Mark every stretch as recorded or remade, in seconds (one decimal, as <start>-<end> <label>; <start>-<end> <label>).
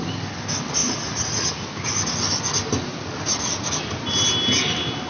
0.0-0.8 recorded; 0.8-1.5 remade; 1.5-5.1 recorded